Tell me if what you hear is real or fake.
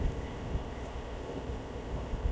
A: fake